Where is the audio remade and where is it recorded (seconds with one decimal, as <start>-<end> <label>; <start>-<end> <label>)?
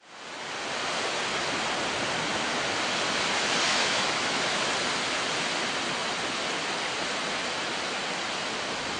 0.0-3.7 recorded; 3.7-4.7 remade; 4.7-9.0 recorded